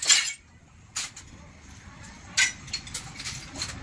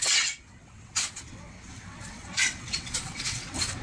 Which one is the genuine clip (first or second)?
first